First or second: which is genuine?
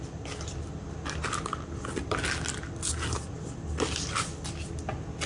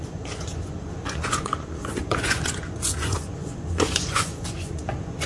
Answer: first